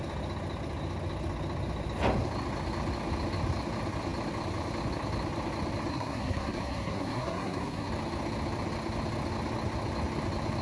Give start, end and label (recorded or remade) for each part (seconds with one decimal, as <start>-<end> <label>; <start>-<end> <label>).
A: 0.0-5.9 recorded; 5.9-7.9 remade; 7.9-10.6 recorded